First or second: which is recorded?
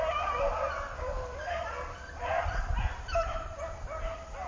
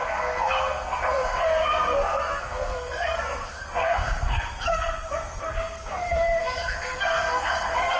first